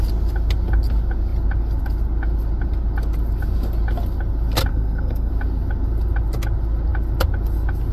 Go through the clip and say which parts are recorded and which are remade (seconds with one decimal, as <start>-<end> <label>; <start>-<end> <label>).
0.0-4.7 recorded; 4.7-5.3 remade; 5.3-7.9 recorded

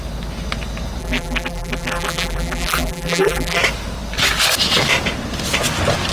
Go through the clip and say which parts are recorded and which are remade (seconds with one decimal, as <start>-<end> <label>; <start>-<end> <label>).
0.0-1.0 recorded; 1.0-3.6 remade; 3.6-6.1 recorded